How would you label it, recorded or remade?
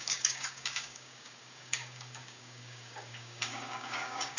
remade